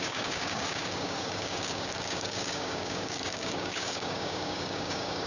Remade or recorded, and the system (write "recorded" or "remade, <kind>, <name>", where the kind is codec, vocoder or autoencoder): remade, codec, DAC